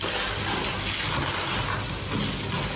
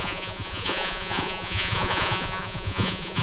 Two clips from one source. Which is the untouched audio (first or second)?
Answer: first